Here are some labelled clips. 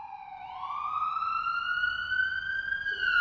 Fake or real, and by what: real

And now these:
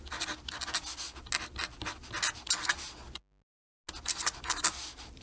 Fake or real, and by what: real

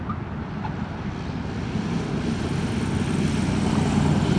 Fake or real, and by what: real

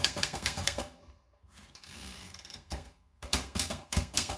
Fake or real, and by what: fake, codec, SNAC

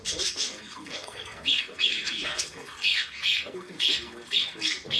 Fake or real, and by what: fake, codec, SNAC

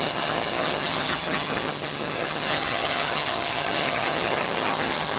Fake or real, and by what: fake, vocoder, HiFi-GAN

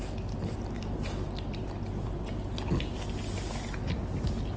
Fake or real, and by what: real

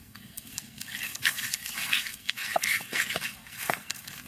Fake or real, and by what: fake, codec, SNAC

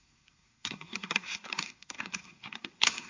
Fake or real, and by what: fake, codec, SNAC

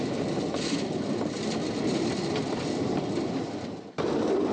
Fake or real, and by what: real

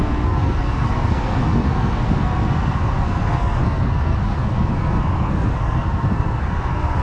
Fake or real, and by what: fake, codec, SNAC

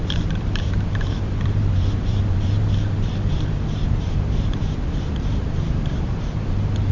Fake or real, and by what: fake, vocoder, BigVGAN v2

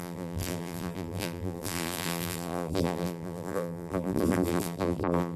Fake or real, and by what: fake, vocoder, BigVGAN v2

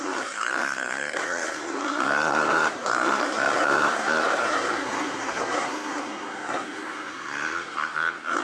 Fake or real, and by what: fake, codec, SNAC